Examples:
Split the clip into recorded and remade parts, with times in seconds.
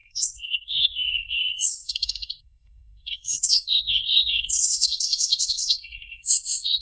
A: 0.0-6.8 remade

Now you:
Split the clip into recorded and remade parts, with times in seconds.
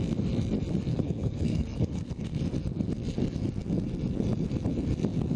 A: 0.0-0.9 recorded; 0.9-2.4 remade; 2.4-5.4 recorded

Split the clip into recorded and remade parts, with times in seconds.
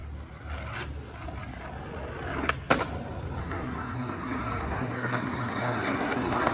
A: 0.0-3.4 recorded; 3.4-6.5 remade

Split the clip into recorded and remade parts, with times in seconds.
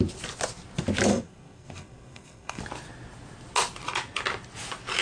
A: 0.0-1.1 recorded; 1.1-2.6 remade; 2.6-5.0 recorded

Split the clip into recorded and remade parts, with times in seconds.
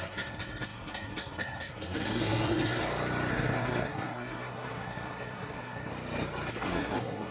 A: 0.0-2.8 remade; 2.8-3.3 recorded; 3.3-5.9 remade; 5.9-6.5 recorded; 6.5-7.3 remade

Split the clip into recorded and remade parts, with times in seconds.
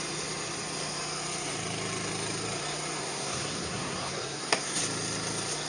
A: 0.0-3.0 recorded; 3.0-4.8 remade; 4.8-5.7 recorded